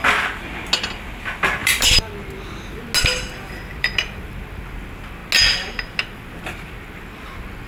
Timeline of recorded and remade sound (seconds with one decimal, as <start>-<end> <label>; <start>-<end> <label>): 0.0-1.6 recorded; 1.6-2.5 remade; 2.5-3.7 recorded; 3.7-4.4 remade; 4.4-7.7 recorded